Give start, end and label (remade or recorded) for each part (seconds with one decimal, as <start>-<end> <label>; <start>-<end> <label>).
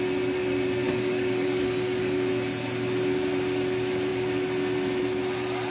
0.0-0.8 recorded; 0.8-2.3 remade; 2.3-5.7 recorded